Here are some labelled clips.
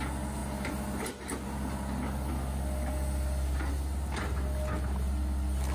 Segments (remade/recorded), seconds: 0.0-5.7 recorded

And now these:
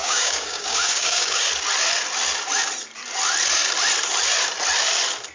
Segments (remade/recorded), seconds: 0.0-1.5 remade; 1.5-5.3 recorded

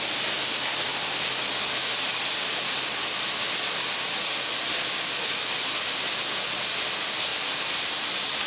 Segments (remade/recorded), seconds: 0.0-8.5 recorded

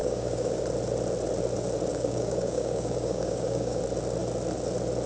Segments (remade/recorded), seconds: 0.0-0.6 remade; 0.6-1.9 recorded; 1.9-3.8 remade; 3.8-5.1 recorded

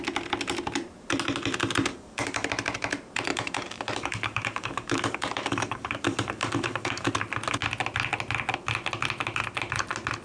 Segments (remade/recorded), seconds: 0.0-1.9 recorded; 1.9-2.5 remade; 2.5-3.3 recorded; 3.3-7.1 remade; 7.1-10.2 recorded

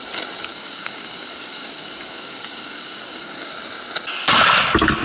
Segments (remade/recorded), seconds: 0.0-0.5 recorded; 0.5-3.5 remade; 3.5-5.0 recorded

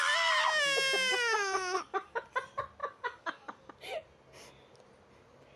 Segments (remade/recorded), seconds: 0.0-1.1 recorded; 1.1-2.2 remade; 2.2-2.8 recorded; 2.8-3.7 remade; 3.7-5.6 recorded

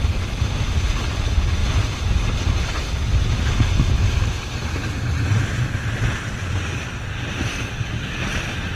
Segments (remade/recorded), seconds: 0.0-7.5 recorded; 7.5-8.2 remade; 8.2-8.8 recorded